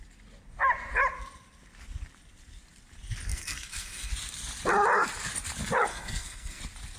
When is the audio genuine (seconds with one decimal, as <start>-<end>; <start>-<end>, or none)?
0.0-3.3; 4.1-5.9; 6.6-7.0